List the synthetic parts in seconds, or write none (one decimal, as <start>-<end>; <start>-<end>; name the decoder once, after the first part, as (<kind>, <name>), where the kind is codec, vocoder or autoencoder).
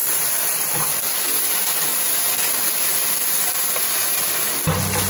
0.0-0.7 (vocoder, BigVGAN v2)